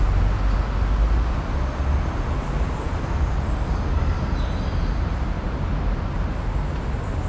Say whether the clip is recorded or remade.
recorded